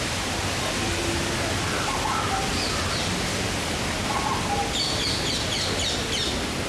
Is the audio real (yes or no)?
yes